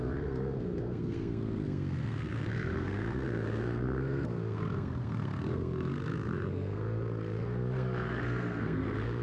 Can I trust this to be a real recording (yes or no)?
no